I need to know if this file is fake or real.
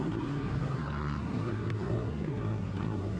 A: fake